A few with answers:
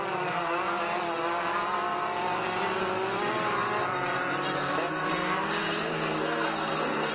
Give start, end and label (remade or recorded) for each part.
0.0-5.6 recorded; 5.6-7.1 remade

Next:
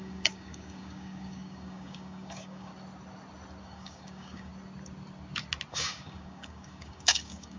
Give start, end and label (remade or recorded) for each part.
0.0-2.7 remade; 2.7-3.6 recorded; 3.6-4.5 remade; 4.5-5.7 recorded; 5.7-7.6 remade

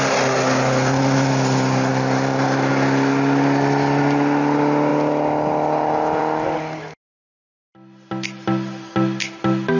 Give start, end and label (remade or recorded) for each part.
0.0-1.9 recorded; 1.9-2.7 remade; 2.7-9.8 recorded

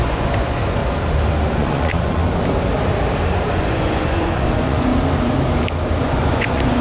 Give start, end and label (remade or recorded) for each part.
0.0-0.8 remade; 0.8-1.5 recorded; 1.5-2.2 remade; 2.2-3.5 recorded; 3.5-4.9 remade; 4.9-6.0 recorded; 6.0-6.8 remade

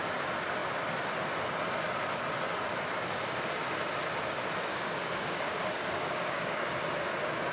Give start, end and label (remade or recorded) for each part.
0.0-4.7 recorded; 4.7-6.7 remade; 6.7-7.5 recorded